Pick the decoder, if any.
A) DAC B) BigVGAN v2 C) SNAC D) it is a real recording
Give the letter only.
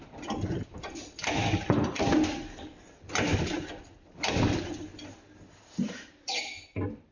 D